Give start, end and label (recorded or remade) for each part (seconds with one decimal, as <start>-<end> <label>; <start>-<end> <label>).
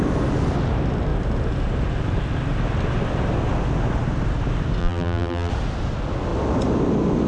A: 0.0-4.8 recorded; 4.8-5.5 remade; 5.5-7.3 recorded